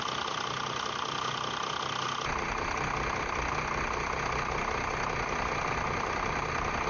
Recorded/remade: recorded